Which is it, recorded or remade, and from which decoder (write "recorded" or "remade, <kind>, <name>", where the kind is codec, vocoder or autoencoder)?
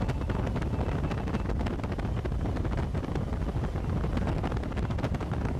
recorded